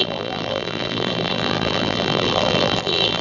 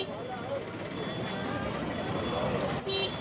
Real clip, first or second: second